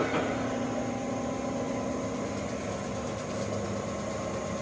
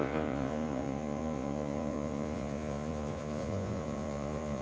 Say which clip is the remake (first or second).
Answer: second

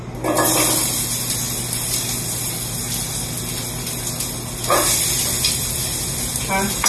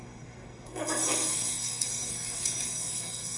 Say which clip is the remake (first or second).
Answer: second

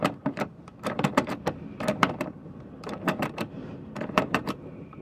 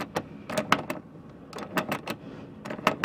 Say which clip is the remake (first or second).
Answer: first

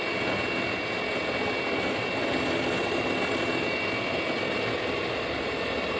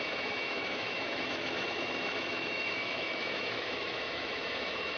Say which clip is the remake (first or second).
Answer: second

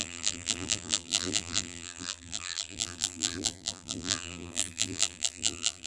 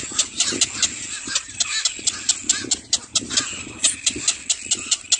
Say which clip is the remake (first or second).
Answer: first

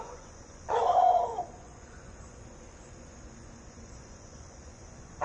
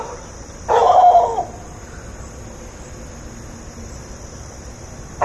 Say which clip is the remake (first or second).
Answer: first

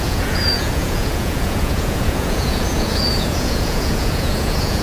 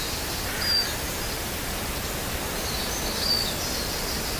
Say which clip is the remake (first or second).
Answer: first